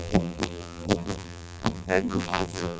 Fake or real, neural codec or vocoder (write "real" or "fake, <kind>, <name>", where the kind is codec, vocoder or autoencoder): fake, vocoder, BigVGAN v2